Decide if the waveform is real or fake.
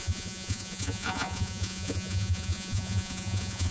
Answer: fake